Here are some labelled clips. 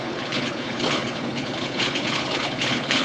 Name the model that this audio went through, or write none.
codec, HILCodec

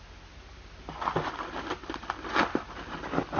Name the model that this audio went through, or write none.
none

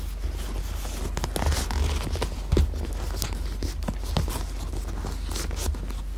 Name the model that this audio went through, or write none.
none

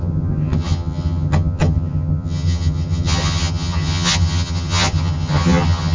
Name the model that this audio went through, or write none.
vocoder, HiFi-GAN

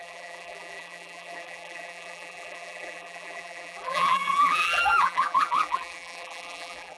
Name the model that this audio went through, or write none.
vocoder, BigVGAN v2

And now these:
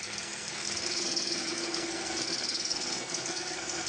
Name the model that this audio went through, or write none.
codec, SNAC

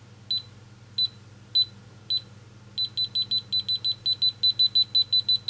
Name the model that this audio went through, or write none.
none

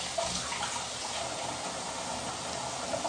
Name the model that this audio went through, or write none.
none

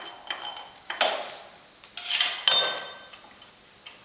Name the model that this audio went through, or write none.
none